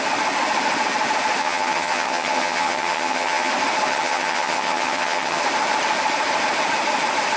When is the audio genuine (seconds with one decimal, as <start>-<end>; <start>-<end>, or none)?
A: 0.0-1.4; 3.5-3.9; 5.4-7.4